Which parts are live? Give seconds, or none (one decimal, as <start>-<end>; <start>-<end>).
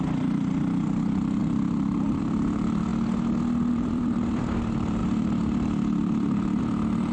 2.9-3.7